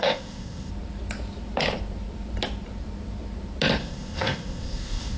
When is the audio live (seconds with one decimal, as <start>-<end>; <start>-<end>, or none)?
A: 0.7-3.8